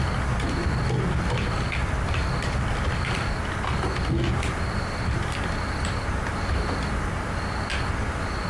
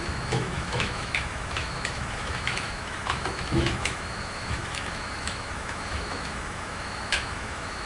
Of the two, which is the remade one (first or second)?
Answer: second